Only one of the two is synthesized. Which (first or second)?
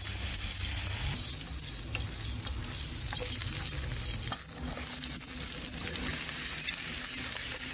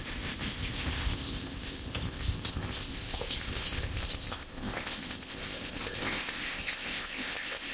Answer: second